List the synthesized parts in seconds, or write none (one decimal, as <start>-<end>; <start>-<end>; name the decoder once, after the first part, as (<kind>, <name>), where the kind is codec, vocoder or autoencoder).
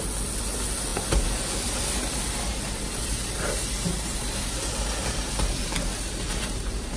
2.5-7.0 (vocoder, BigVGAN v2)